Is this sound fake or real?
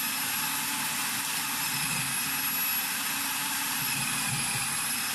real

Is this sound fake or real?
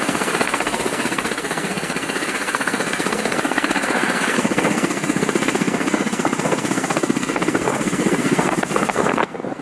fake